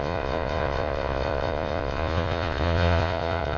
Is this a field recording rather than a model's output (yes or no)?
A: no